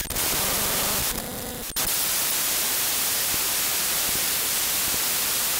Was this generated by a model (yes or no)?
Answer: no